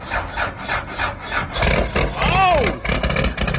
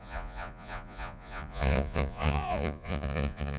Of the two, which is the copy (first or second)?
second